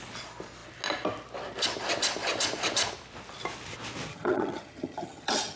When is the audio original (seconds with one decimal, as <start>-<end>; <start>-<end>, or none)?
0.0-4.1